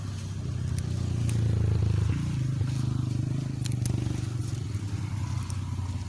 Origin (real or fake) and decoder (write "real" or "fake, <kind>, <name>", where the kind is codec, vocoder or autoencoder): real